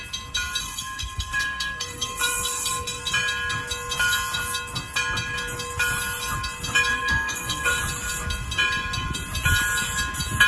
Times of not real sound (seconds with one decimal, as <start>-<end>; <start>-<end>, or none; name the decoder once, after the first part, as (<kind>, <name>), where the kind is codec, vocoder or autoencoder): 0.6-3.0 (codec, SNAC); 6.9-7.8

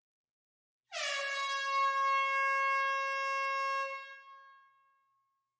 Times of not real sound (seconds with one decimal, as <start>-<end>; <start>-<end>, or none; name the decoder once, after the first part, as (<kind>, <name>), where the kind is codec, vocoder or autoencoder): none

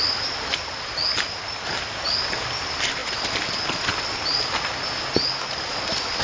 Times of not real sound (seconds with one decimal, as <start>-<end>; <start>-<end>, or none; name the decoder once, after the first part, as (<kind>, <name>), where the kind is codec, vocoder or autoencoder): none